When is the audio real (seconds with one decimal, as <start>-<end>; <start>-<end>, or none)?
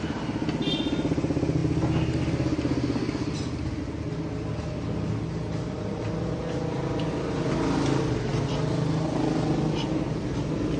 0.0-10.8